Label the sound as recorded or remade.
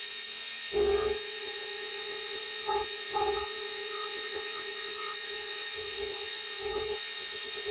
remade